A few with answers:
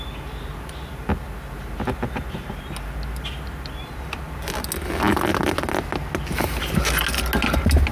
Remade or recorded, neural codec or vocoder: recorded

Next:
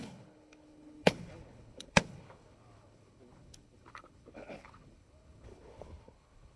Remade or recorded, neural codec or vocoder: remade, codec, HILCodec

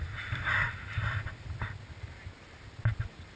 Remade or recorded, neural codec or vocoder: recorded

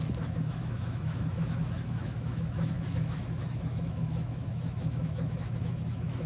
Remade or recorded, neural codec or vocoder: remade, autoencoder, DAC-VAE